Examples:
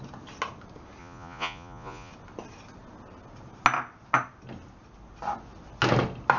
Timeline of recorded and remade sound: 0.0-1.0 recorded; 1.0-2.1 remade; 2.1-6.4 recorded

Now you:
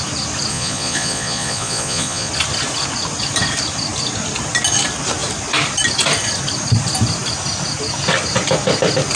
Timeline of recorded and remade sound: 0.0-0.5 recorded; 0.5-2.3 remade; 2.3-9.2 recorded

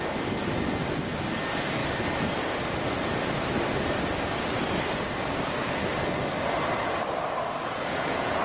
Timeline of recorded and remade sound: 0.0-7.6 recorded; 7.6-8.4 remade